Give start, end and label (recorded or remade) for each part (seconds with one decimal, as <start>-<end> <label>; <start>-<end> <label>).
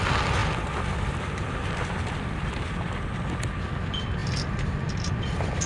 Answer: 0.0-0.4 recorded; 0.4-3.4 remade; 3.4-5.7 recorded